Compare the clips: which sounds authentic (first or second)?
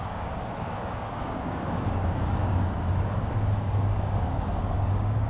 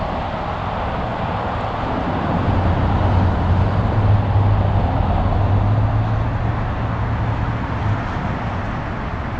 second